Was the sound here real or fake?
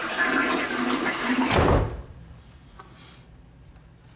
fake